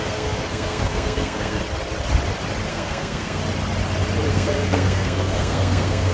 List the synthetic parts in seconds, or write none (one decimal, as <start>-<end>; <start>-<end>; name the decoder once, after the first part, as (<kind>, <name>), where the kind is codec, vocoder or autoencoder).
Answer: 0.0-1.6 (codec, SNAC); 2.7-3.4; 4.3-6.1